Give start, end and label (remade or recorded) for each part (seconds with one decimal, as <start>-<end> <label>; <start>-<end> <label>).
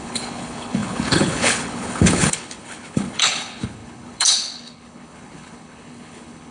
0.0-6.5 remade